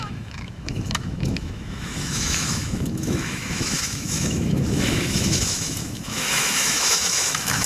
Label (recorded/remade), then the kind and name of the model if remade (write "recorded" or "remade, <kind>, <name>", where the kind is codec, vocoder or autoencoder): remade, autoencoder, DAC-VAE